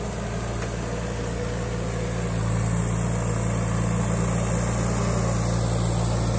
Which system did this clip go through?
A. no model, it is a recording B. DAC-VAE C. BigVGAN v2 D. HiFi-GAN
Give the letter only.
A